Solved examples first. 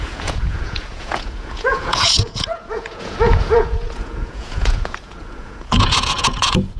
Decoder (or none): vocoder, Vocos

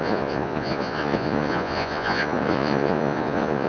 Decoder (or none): vocoder, Vocos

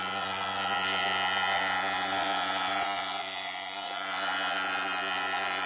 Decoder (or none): vocoder, Vocos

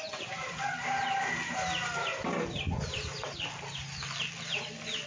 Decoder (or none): none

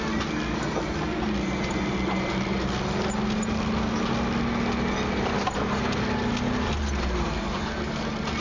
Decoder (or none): none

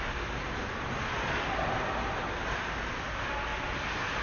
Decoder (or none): none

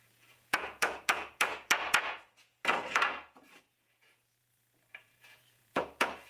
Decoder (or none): vocoder, Vocos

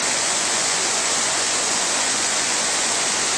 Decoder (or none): vocoder, Vocos